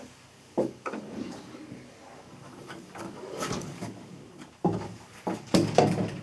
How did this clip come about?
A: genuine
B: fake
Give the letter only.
B